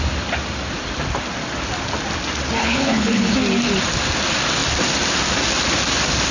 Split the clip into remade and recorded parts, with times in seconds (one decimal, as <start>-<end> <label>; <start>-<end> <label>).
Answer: 0.0-2.6 recorded; 2.6-3.3 remade; 3.3-6.3 recorded